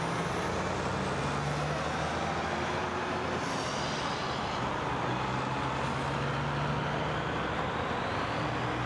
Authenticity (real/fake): real